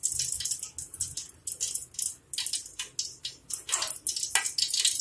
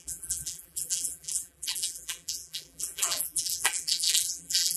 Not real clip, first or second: second